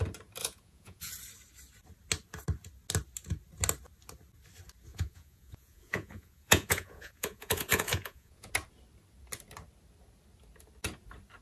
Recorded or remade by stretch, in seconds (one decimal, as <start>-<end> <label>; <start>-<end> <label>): 0.0-0.4 recorded; 0.4-1.1 remade; 1.1-4.9 recorded; 4.9-8.5 remade; 8.5-11.4 recorded